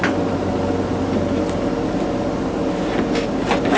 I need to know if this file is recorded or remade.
recorded